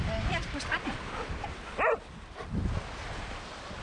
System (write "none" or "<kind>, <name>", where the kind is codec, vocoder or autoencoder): none